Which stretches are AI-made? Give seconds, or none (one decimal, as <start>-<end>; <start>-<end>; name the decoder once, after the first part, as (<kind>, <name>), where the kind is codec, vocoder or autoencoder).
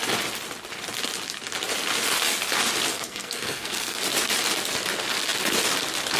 2.9-4.0 (codec, SNAC)